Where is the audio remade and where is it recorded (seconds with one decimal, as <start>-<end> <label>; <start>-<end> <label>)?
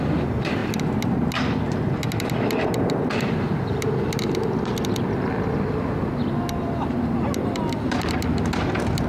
0.0-9.1 recorded